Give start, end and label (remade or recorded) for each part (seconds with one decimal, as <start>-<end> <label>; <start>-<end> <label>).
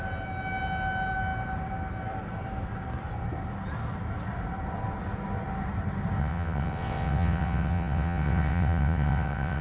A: 0.0-6.2 recorded; 6.2-9.6 remade